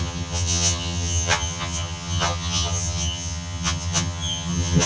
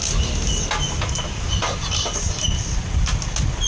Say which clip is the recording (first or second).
second